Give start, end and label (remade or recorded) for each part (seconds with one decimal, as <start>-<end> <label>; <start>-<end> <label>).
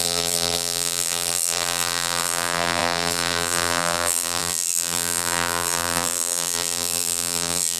0.0-7.8 remade